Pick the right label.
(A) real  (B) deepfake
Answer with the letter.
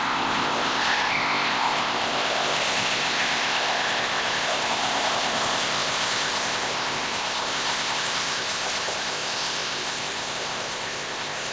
B